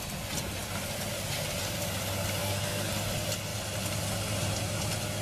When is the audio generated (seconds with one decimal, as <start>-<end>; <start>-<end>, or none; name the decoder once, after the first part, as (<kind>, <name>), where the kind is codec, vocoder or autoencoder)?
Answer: 2.4-2.9 (codec, SNAC)